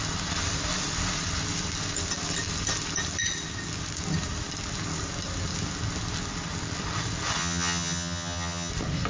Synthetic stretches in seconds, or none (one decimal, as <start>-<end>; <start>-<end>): 7.4-8.7